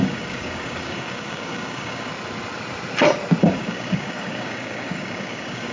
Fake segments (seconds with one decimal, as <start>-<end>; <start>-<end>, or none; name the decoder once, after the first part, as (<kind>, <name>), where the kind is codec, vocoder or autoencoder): 0.0-2.1 (codec, DAC); 3.4-5.7